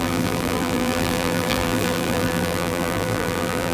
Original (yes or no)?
no